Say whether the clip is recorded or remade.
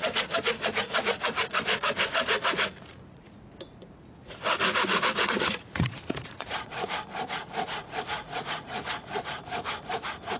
remade